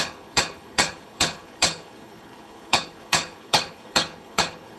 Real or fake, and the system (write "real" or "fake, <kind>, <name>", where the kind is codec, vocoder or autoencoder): fake, codec, HILCodec